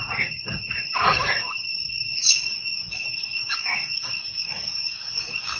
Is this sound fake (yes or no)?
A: yes